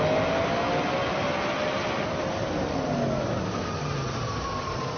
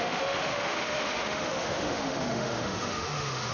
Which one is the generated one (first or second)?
second